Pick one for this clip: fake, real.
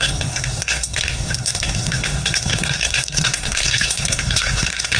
fake